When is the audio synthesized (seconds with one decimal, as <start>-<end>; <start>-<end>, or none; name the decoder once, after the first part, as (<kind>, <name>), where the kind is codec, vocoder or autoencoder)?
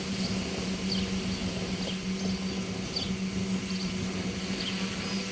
none